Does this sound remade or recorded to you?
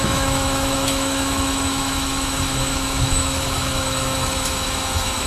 remade